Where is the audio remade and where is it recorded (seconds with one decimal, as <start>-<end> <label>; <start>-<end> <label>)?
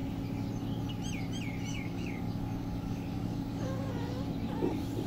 0.0-1.7 recorded; 1.7-3.9 remade; 3.9-5.1 recorded